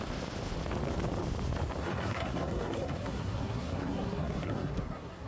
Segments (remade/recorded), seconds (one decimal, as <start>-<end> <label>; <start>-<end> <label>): 0.0-1.8 recorded; 1.8-5.3 remade